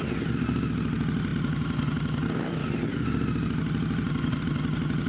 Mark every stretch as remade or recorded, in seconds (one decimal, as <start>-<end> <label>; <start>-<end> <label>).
0.0-5.1 recorded

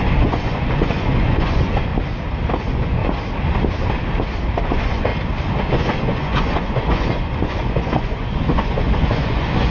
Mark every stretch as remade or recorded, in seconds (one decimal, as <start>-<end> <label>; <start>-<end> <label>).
0.0-1.9 remade; 1.9-2.6 recorded; 2.6-3.0 remade; 3.0-4.6 recorded; 4.6-5.1 remade; 5.1-5.7 recorded; 5.7-9.7 remade

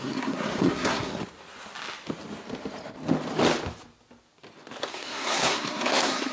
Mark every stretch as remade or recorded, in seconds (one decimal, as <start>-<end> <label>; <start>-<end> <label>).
0.0-1.1 remade; 1.1-4.9 recorded; 4.9-6.3 remade

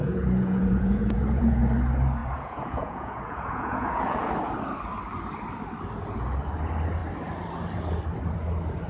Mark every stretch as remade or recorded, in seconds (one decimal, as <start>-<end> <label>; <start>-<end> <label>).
0.0-1.6 remade; 1.6-2.2 recorded; 2.2-4.3 remade; 4.3-8.9 recorded